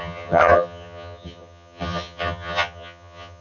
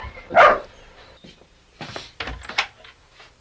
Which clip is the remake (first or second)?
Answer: first